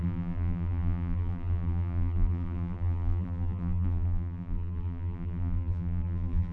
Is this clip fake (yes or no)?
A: yes